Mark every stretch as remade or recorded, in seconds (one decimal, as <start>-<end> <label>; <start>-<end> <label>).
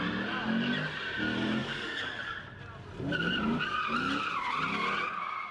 0.0-1.6 recorded; 1.6-2.4 remade; 2.4-5.5 recorded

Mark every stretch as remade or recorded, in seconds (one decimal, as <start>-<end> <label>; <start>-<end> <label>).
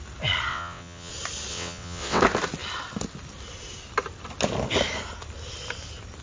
0.0-0.5 recorded; 0.5-1.1 remade; 1.1-1.5 recorded; 1.5-2.2 remade; 2.2-6.2 recorded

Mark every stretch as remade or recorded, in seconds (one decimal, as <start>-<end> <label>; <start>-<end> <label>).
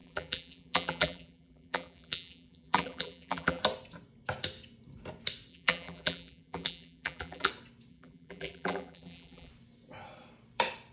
0.0-3.6 remade; 3.6-5.5 recorded; 5.5-7.5 remade; 7.5-7.9 recorded; 7.9-9.5 remade; 9.5-10.9 recorded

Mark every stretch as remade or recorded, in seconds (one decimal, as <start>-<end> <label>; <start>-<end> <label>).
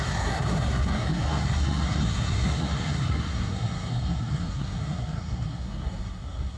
0.0-6.6 remade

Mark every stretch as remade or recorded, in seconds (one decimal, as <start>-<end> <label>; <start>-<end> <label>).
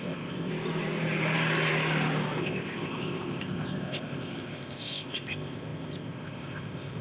0.0-0.5 remade; 0.5-2.4 recorded; 2.4-7.0 remade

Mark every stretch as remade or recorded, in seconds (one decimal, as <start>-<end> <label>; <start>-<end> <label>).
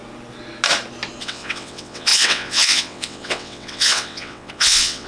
0.0-1.2 recorded; 1.2-5.1 remade